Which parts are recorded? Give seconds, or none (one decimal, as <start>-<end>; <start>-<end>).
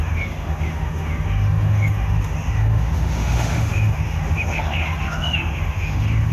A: none